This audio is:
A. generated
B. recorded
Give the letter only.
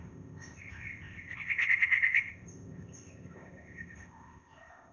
A